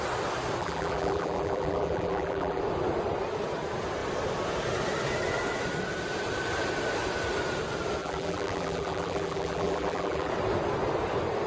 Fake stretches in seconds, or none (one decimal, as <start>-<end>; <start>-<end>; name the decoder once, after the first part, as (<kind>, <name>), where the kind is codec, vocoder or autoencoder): 0.6-2.6 (vocoder, BigVGAN v2); 8.0-10.3